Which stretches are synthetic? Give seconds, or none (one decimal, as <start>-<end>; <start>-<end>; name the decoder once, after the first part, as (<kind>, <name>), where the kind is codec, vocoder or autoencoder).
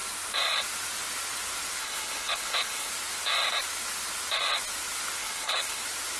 1.8-2.9 (codec, HILCodec); 5.2-5.8